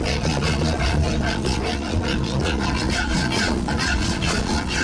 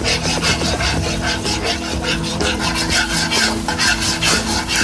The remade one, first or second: first